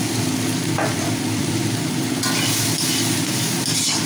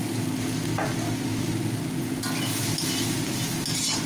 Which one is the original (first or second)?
second